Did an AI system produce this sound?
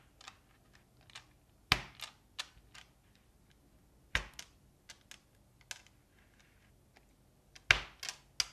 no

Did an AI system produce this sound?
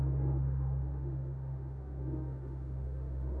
yes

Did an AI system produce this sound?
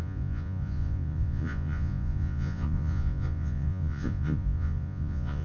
yes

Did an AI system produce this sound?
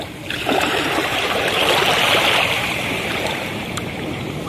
yes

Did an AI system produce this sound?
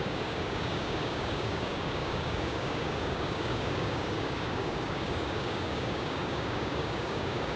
yes